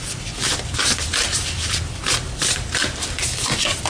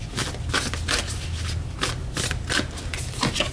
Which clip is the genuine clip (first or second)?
second